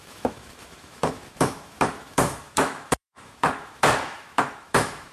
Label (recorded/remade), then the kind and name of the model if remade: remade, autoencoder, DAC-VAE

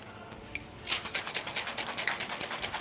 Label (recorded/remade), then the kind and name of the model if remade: recorded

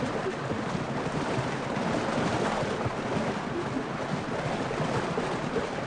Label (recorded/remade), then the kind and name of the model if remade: recorded